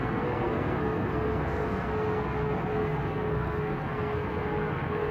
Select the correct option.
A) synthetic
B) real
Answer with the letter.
A